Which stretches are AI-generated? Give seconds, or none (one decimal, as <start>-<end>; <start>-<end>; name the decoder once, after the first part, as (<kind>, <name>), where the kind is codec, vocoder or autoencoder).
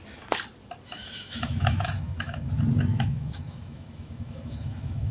1.0-2.5 (autoencoder, DAC-VAE); 2.9-5.1